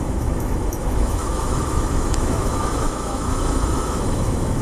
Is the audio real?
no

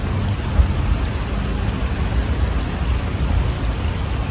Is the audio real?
yes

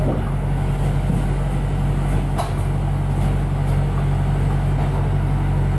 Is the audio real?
yes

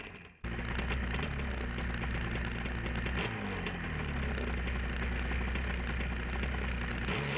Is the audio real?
yes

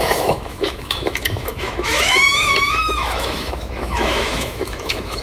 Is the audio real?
no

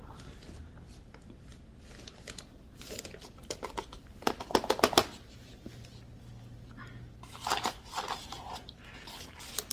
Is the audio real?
yes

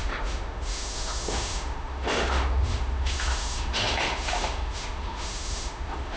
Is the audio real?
no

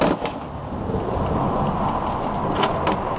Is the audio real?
yes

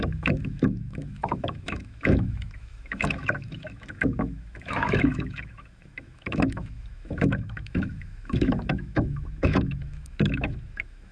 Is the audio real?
no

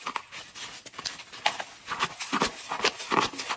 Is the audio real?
yes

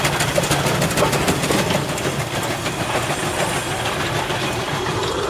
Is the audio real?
yes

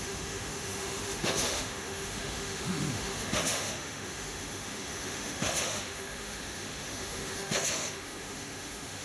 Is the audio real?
no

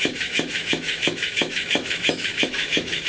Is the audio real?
no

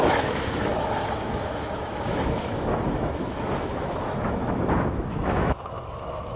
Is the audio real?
no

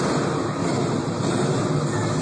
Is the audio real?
yes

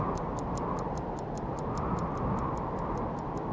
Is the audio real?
yes